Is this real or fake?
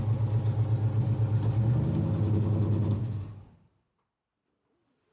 real